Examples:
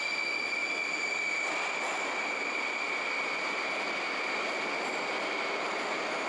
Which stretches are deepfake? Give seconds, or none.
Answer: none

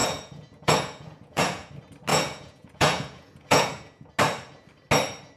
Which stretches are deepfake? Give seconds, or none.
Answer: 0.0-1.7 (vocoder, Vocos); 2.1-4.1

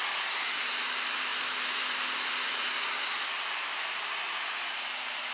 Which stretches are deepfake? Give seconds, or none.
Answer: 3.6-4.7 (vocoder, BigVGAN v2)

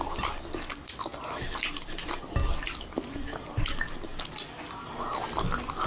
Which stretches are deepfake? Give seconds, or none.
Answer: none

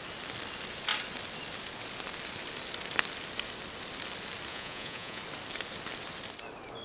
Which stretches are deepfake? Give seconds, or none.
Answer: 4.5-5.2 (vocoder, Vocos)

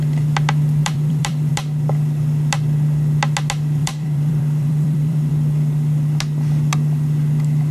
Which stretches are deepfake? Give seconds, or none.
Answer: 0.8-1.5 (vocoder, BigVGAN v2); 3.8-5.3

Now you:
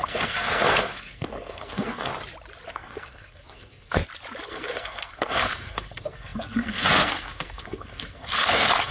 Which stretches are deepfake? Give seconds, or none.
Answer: 0.0-2.1 (codec, SNAC); 2.7-4.0; 4.5-8.9

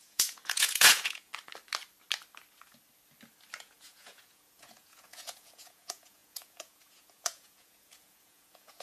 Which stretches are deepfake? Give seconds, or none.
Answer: 0.0-1.3 (vocoder, Vocos); 3.6-8.8